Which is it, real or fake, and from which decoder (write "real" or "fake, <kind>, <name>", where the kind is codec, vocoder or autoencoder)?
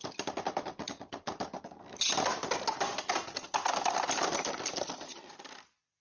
real